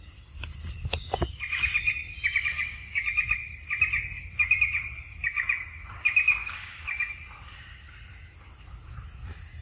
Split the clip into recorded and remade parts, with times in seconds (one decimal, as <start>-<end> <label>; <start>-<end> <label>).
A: 0.0-2.5 recorded; 2.5-3.0 remade; 3.0-6.4 recorded; 6.4-7.1 remade; 7.1-9.6 recorded